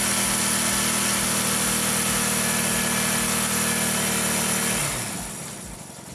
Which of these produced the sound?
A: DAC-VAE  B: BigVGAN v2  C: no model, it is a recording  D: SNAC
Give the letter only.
C